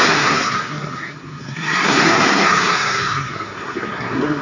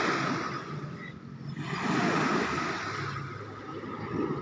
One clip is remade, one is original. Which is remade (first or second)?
first